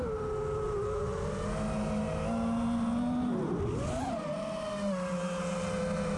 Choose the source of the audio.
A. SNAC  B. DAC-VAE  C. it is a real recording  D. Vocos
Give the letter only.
C